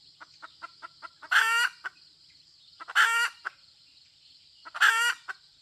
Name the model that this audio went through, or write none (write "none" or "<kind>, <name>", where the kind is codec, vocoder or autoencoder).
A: none